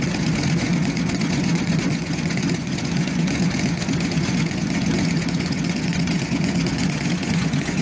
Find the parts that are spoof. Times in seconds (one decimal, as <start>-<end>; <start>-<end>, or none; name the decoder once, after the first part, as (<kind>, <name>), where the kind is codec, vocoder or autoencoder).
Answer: 0.0-7.8 (vocoder, Vocos)